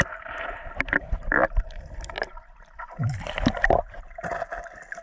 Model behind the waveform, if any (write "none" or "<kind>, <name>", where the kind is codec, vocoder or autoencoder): none